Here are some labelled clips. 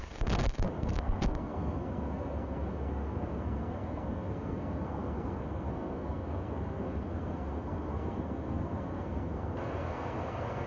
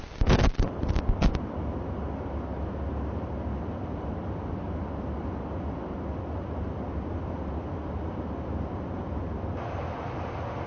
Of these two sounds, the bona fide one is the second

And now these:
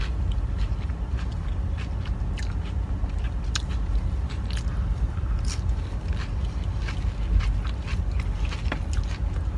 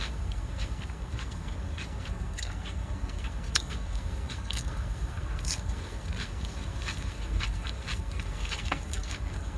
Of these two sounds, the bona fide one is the first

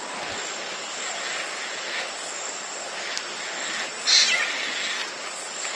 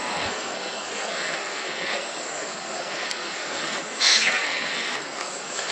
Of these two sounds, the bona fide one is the first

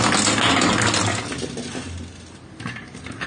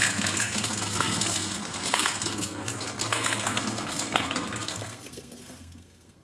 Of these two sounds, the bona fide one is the first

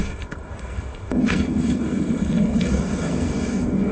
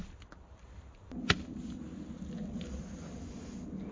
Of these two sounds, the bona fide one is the second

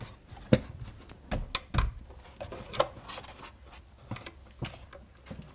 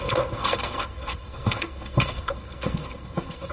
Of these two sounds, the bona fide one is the first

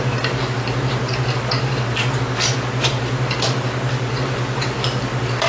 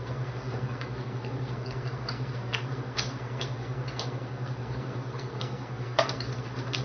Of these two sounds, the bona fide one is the first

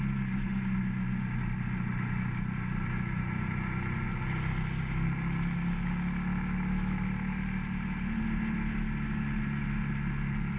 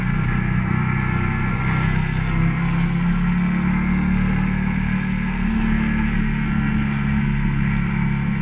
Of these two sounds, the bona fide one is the first